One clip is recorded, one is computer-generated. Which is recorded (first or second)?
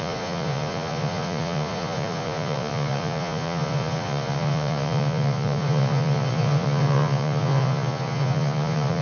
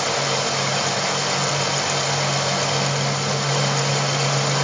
second